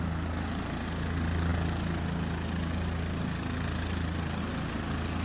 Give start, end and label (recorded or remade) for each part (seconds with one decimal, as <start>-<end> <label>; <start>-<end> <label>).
0.0-5.2 recorded